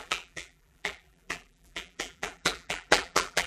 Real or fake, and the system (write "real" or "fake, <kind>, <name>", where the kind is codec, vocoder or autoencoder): fake, vocoder, BigVGAN v2